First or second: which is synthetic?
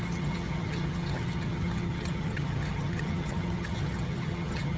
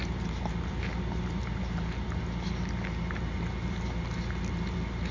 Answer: first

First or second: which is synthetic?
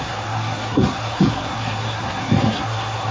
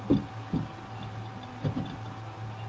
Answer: first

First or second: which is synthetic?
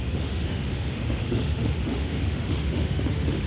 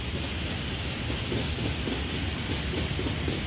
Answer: first